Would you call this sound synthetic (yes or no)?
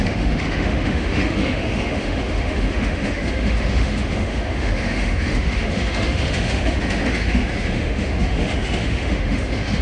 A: yes